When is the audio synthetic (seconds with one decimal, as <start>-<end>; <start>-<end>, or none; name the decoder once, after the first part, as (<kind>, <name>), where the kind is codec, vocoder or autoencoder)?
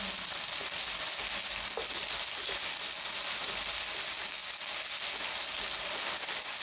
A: none